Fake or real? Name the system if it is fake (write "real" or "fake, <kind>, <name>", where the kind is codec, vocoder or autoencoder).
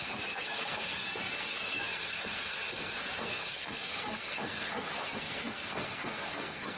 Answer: fake, codec, SNAC